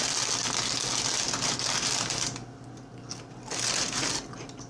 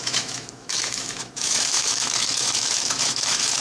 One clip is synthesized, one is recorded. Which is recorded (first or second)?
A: first